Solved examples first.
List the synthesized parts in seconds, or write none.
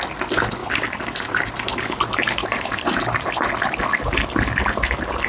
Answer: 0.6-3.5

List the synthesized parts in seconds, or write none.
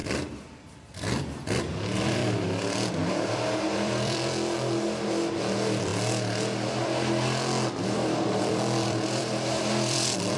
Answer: 1.6-2.2; 3.1-5.9; 8.4-10.4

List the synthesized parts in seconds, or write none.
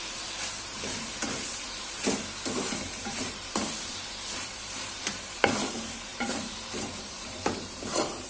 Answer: 0.0-8.3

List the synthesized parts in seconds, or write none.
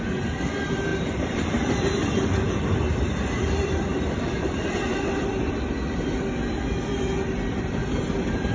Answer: 0.9-5.5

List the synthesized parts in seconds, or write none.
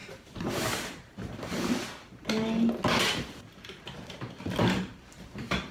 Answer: 0.0-1.7; 4.6-5.7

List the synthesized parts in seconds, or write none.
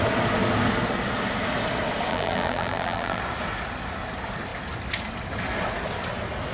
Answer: 2.1-3.2